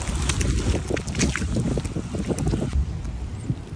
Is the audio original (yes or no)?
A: yes